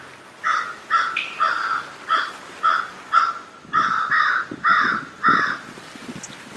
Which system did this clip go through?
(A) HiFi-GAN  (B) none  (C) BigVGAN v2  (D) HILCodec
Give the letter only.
B